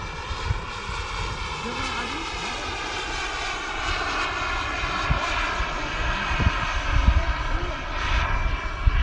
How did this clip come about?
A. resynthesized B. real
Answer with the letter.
B